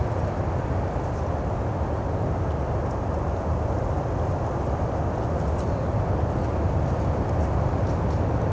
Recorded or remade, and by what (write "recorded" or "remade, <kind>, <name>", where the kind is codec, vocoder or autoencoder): recorded